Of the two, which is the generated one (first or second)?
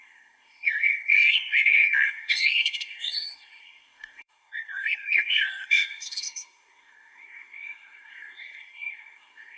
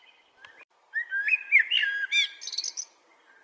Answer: first